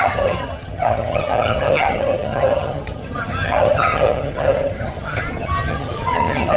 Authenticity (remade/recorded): remade